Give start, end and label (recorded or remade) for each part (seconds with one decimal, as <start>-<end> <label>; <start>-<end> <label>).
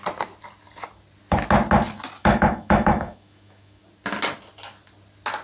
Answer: 0.0-2.2 recorded; 2.2-3.8 remade; 3.8-5.4 recorded